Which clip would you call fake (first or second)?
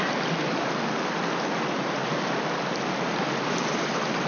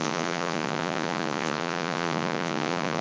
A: second